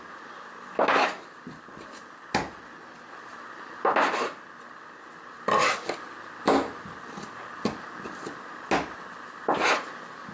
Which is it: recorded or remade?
recorded